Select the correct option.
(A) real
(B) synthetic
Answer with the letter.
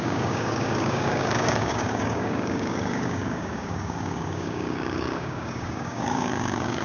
B